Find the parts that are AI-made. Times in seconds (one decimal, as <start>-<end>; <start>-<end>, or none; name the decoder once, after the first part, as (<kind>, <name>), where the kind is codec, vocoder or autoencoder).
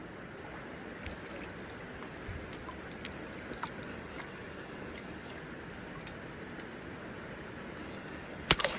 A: 3.9-5.4 (codec, DAC); 7.8-8.8